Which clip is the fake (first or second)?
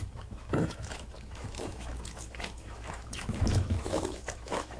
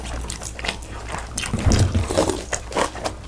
first